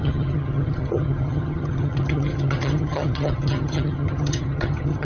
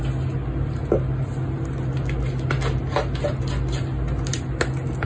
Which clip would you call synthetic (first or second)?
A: first